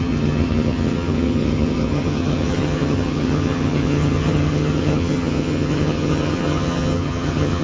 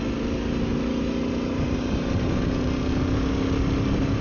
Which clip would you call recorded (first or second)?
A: second